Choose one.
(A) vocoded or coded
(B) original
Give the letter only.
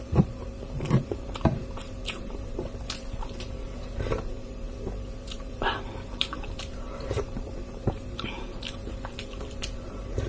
A